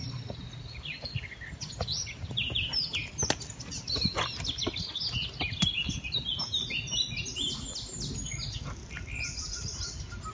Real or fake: real